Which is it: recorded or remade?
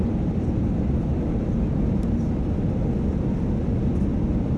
recorded